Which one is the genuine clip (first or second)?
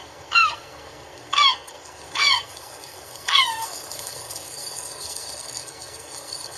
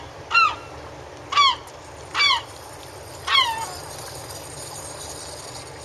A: second